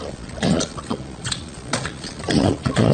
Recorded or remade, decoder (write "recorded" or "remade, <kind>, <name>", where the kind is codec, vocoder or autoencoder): remade, vocoder, Vocos